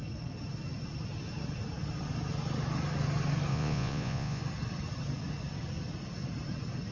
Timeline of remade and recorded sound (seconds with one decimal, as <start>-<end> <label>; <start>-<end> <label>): 0.0-3.5 recorded; 3.5-4.4 remade; 4.4-6.9 recorded